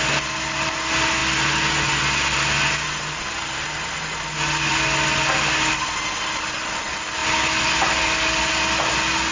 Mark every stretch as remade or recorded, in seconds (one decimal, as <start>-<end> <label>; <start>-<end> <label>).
0.0-9.3 recorded